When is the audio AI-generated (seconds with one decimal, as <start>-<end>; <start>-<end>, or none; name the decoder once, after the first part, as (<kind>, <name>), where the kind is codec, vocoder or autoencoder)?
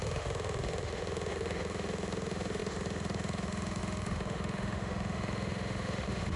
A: 0.0-6.4 (autoencoder, DAC-VAE)